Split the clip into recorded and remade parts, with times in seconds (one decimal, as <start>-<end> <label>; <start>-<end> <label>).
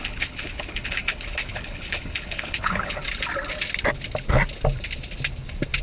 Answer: 0.0-3.0 remade; 3.0-5.8 recorded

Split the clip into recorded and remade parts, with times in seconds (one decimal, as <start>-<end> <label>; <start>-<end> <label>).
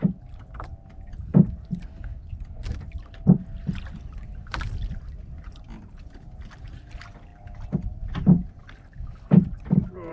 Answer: 0.0-10.1 recorded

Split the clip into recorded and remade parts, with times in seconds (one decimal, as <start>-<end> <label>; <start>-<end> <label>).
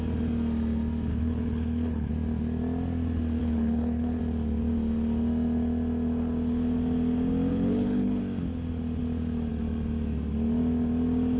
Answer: 0.0-1.1 recorded; 1.1-2.1 remade; 2.1-3.4 recorded; 3.4-4.2 remade; 4.2-7.5 recorded; 7.5-8.2 remade; 8.2-11.4 recorded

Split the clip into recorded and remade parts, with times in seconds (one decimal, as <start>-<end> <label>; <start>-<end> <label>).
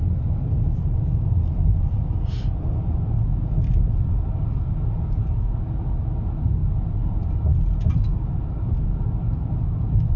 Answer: 0.0-10.2 recorded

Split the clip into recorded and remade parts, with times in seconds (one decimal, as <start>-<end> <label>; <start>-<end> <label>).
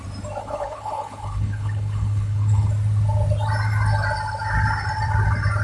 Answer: 0.0-0.4 recorded; 0.4-2.7 remade; 2.7-5.6 recorded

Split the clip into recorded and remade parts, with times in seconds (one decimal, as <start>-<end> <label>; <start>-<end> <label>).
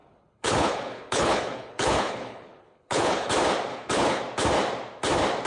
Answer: 0.0-3.3 remade; 3.3-3.7 recorded; 3.7-4.2 remade; 4.2-5.5 recorded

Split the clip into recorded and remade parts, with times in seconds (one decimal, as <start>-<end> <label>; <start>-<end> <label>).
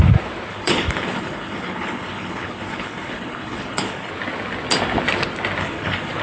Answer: 0.0-0.5 recorded; 0.5-4.1 remade; 4.1-5.6 recorded; 5.6-6.2 remade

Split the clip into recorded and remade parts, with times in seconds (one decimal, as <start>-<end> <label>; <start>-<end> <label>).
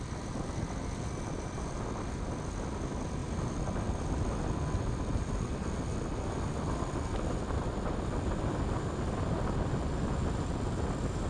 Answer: 0.0-11.3 recorded